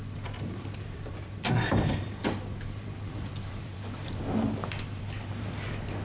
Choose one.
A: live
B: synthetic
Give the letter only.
B